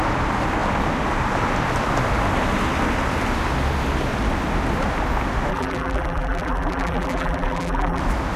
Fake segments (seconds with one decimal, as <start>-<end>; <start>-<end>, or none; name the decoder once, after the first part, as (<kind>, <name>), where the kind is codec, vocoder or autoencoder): 5.5-8.0 (vocoder, BigVGAN v2)